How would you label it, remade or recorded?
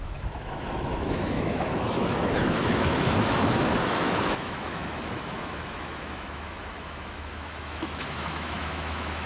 remade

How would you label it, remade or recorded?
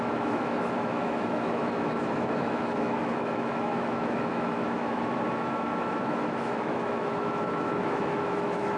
remade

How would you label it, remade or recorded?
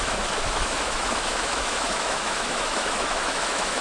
remade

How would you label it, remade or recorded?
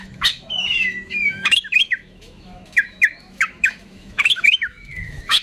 remade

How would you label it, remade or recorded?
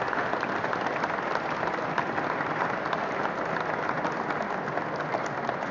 recorded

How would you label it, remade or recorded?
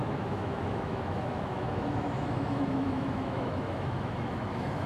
remade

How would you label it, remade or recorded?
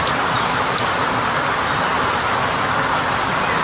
recorded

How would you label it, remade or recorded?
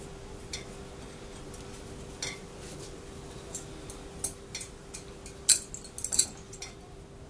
recorded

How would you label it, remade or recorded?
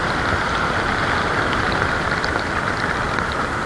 recorded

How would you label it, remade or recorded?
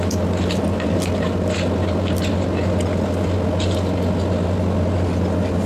recorded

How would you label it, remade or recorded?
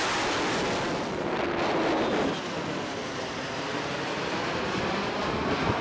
recorded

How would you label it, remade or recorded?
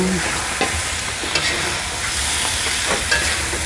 recorded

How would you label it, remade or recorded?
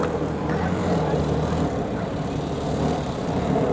recorded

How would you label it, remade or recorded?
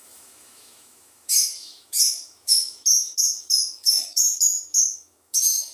remade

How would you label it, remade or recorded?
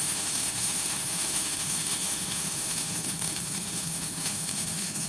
remade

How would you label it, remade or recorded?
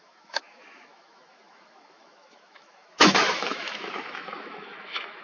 remade